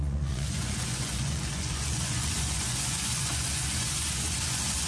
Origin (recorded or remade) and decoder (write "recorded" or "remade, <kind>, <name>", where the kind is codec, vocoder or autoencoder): remade, vocoder, Vocos